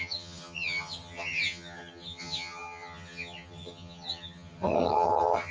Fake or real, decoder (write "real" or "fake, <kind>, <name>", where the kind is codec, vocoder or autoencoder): fake, vocoder, HiFi-GAN